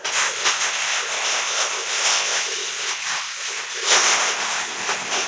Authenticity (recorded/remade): remade